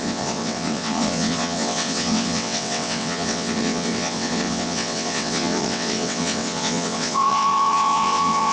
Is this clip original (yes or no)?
no